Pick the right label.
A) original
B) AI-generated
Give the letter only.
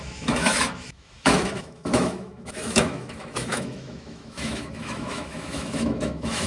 B